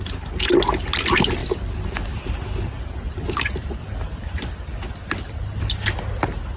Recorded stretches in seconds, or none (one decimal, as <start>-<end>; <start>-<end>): 0.0-6.6